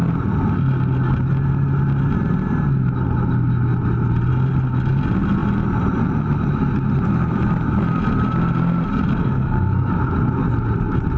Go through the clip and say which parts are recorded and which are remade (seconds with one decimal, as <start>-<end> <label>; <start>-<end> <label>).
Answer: 0.0-9.2 recorded; 9.2-9.9 remade; 9.9-11.2 recorded